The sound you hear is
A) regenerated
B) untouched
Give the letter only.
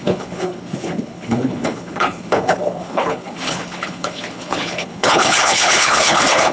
A